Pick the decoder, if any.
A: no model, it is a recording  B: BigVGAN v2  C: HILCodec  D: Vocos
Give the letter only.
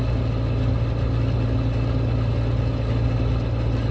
A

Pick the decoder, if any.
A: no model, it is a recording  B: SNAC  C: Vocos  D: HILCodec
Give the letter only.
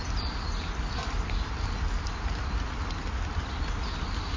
A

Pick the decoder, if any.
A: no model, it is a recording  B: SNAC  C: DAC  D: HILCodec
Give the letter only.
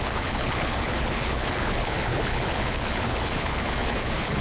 D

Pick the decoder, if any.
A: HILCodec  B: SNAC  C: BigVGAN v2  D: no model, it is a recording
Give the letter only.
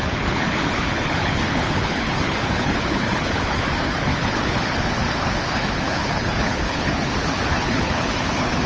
A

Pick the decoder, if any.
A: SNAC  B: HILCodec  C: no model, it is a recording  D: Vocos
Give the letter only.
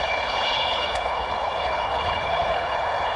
B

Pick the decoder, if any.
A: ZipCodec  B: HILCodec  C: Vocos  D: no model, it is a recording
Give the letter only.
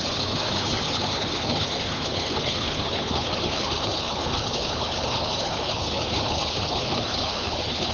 B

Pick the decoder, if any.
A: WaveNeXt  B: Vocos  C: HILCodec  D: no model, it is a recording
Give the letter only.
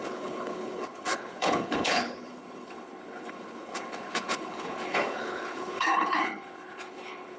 C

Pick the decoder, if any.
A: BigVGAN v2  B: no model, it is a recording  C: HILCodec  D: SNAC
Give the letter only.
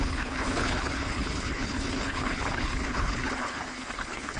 C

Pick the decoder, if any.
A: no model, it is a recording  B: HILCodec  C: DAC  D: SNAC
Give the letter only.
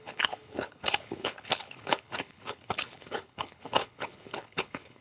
B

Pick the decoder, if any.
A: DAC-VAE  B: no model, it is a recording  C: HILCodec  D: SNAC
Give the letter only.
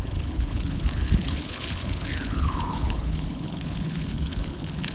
C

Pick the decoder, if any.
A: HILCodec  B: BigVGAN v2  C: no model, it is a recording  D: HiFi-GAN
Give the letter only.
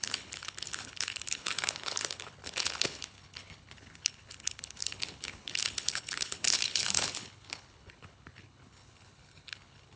A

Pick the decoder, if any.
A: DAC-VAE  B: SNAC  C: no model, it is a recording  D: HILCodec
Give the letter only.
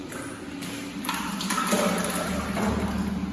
C